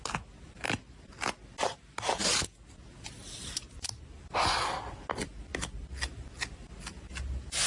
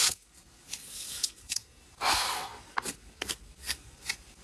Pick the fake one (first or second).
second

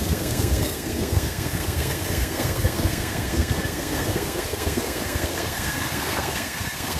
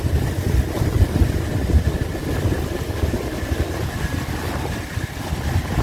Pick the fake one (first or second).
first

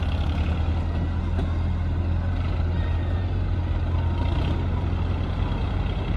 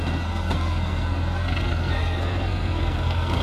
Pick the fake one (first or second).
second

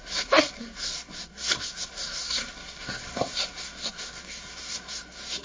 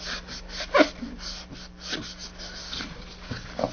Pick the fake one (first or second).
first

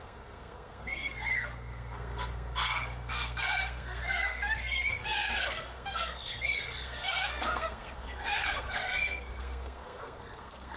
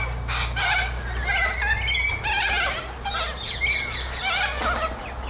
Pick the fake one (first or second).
first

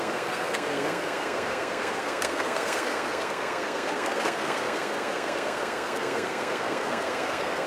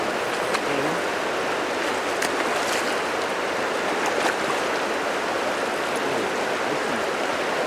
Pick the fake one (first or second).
first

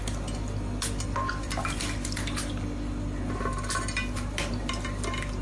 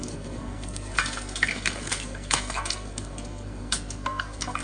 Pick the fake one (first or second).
second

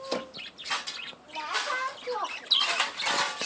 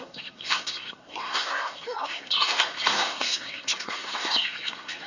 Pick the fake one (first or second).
second